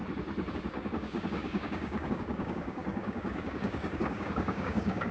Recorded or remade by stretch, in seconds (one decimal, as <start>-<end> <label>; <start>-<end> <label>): 0.0-0.5 recorded; 0.5-5.1 remade